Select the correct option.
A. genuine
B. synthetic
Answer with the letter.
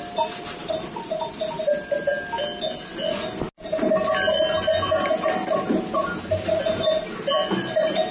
A